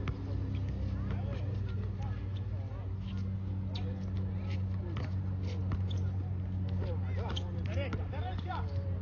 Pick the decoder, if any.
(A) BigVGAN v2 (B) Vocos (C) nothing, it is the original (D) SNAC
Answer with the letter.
C